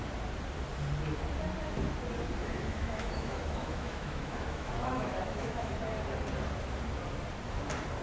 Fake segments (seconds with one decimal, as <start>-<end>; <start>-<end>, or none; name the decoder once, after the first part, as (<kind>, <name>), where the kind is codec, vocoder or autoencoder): 2.4-5.7 (autoencoder, DAC-VAE)